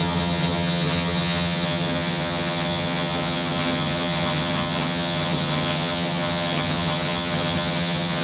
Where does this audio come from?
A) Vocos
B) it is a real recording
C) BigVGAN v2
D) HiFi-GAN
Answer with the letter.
D